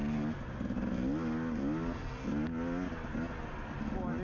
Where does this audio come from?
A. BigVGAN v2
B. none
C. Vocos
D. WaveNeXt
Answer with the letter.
B